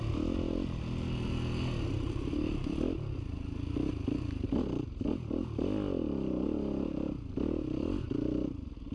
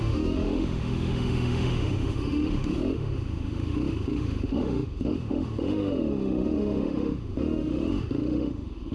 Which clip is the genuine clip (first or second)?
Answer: first